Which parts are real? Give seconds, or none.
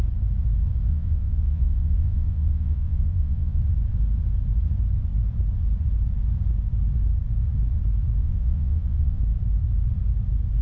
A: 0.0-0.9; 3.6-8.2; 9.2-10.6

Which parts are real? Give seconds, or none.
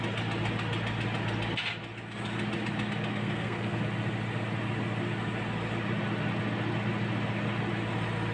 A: 0.0-3.2; 3.8-8.3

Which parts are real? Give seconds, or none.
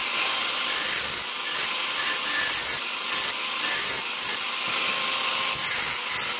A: 0.0-6.4